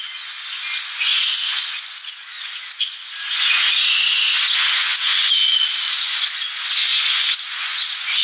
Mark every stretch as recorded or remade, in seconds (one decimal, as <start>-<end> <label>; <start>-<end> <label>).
0.0-5.1 remade; 5.1-5.9 recorded; 5.9-8.2 remade